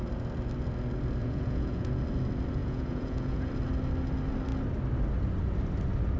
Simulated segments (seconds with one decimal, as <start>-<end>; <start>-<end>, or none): 1.2-2.0; 2.6-3.5